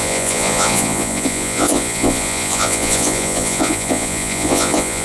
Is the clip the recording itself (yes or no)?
no